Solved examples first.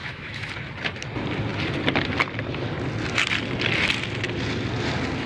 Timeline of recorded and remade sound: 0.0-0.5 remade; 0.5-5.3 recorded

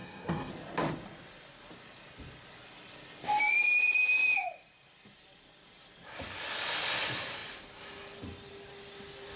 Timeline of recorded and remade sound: 0.0-0.5 remade; 0.5-9.4 recorded

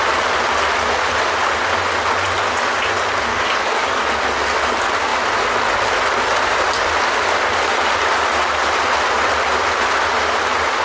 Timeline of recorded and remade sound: 0.0-3.3 recorded; 3.3-4.1 remade; 4.1-10.8 recorded

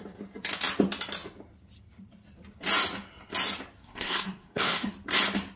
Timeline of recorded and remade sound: 0.0-3.8 recorded; 3.8-4.9 remade; 4.9-5.6 recorded

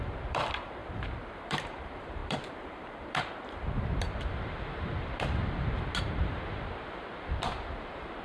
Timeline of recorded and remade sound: 0.0-0.8 remade; 0.8-1.4 recorded; 1.4-8.2 remade